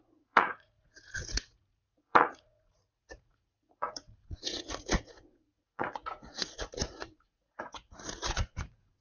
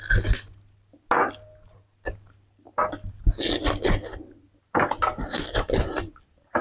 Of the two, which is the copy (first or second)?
first